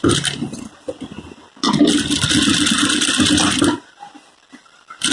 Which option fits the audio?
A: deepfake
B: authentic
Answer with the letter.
B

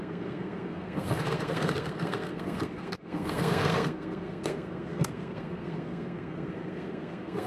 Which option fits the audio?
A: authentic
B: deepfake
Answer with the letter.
B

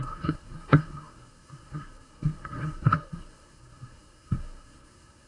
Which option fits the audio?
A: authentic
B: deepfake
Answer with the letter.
B